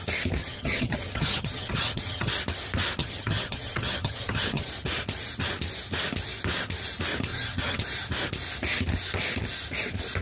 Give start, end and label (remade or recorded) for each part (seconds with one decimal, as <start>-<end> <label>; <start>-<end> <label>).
0.0-0.4 recorded; 0.4-2.3 remade; 2.3-3.0 recorded; 3.0-4.7 remade; 4.7-7.3 recorded; 7.3-7.8 remade; 7.8-10.2 recorded